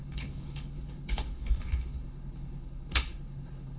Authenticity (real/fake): fake